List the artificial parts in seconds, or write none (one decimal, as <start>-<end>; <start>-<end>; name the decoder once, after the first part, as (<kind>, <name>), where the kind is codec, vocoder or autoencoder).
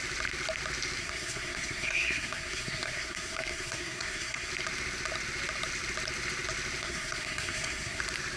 1.0-4.5 (codec, SNAC); 6.8-8.0